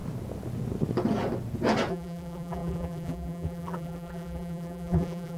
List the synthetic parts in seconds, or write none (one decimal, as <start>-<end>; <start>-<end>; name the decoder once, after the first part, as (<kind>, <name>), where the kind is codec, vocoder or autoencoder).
1.9-5.4 (vocoder, BigVGAN v2)